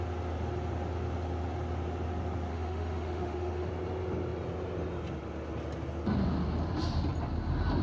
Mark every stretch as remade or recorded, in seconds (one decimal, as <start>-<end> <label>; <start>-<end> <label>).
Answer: 0.0-2.5 recorded; 2.5-3.7 remade; 3.7-7.8 recorded

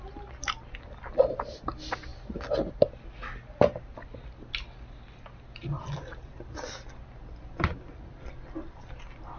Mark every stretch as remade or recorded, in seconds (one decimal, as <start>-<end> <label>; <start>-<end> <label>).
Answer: 0.0-9.4 recorded

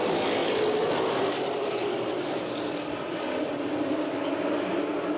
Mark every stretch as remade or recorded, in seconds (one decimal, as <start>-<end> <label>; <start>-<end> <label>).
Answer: 0.0-5.2 recorded